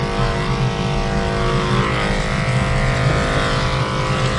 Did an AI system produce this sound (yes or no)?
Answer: no